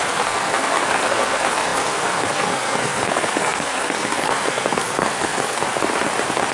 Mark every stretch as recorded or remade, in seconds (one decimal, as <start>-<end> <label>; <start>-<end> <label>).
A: 0.0-5.6 remade; 5.6-6.5 recorded